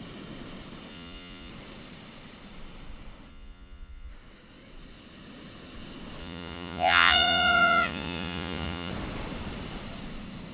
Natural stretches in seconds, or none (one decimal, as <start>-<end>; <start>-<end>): 0.0-0.9; 1.5-3.3; 4.1-6.2; 8.9-10.5